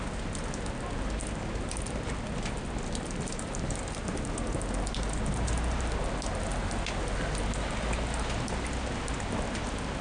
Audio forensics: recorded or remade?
recorded